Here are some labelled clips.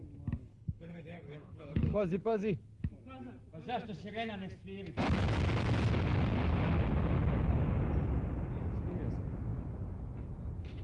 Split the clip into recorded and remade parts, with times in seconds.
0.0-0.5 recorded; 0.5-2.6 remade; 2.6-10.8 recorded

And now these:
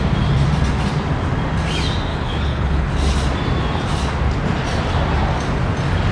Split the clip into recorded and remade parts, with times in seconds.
0.0-2.1 recorded; 2.1-2.9 remade; 2.9-6.1 recorded